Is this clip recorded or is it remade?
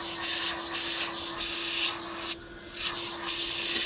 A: recorded